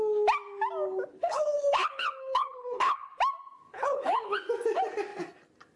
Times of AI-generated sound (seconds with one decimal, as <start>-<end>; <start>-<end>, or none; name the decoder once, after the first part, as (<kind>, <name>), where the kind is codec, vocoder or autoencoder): 1.1-3.1 (codec, HILCodec); 3.7-4.4